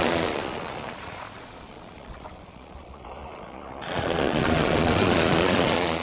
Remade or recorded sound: remade